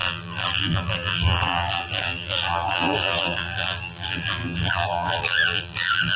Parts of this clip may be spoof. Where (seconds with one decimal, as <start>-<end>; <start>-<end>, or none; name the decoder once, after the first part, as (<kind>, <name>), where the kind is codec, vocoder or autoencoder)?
0.0-6.2 (vocoder, BigVGAN v2)